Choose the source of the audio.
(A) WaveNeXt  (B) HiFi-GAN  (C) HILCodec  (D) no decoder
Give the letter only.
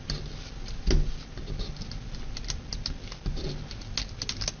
D